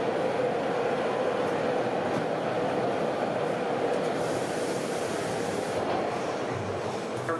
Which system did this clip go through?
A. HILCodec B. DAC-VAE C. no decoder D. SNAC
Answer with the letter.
C